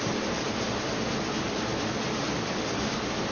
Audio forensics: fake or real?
real